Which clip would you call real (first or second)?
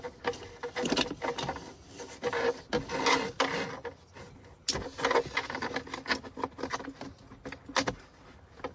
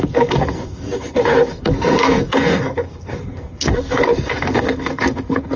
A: first